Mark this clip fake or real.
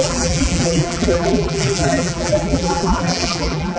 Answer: fake